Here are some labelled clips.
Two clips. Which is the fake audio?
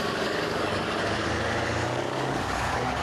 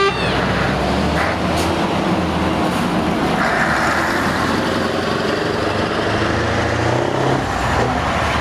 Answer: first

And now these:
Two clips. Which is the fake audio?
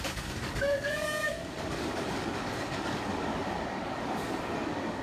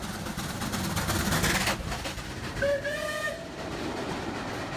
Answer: first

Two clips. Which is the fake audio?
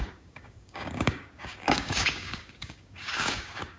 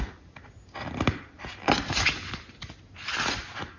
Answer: first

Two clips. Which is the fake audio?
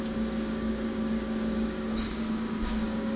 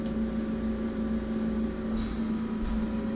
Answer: first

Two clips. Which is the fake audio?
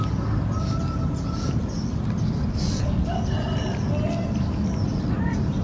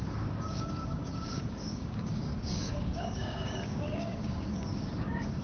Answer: second